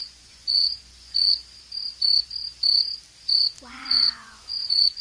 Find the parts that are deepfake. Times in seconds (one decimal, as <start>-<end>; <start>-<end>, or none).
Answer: 0.0-1.4; 3.7-5.0